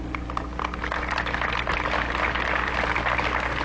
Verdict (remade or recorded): recorded